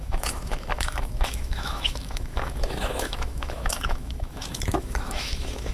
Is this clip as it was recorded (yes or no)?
no